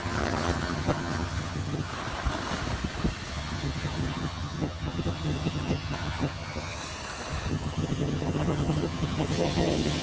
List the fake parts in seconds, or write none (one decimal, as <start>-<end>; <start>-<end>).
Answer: 0.0-1.9; 3.3-6.8; 7.5-10.0